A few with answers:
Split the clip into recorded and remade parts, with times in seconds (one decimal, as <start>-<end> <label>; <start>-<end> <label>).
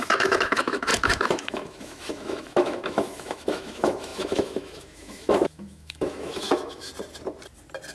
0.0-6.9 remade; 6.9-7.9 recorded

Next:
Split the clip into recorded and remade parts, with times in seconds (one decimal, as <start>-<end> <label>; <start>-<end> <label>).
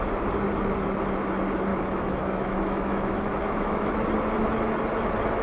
0.0-1.7 recorded; 1.7-3.9 remade; 3.9-5.4 recorded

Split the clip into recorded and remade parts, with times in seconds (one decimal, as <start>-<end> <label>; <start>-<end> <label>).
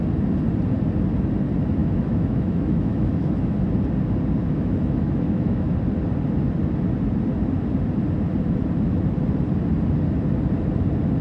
0.0-1.8 recorded; 1.8-3.5 remade; 3.5-4.4 recorded; 4.4-5.7 remade; 5.7-11.2 recorded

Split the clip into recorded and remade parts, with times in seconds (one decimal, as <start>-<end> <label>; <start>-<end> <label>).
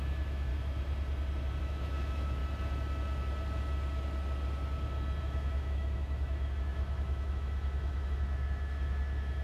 0.0-0.5 remade; 0.5-1.6 recorded; 1.6-2.4 remade; 2.4-5.2 recorded; 5.2-9.4 remade